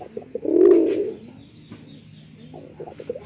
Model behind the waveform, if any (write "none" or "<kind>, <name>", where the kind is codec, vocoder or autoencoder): none